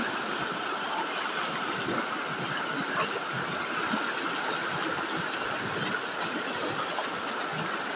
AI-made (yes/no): no